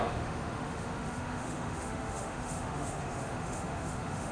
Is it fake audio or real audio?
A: fake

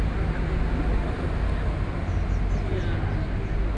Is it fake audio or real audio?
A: real